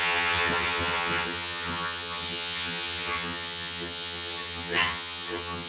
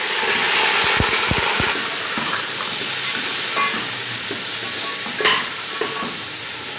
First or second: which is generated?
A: first